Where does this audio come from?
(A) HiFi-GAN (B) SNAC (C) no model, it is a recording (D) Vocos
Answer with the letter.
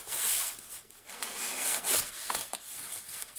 B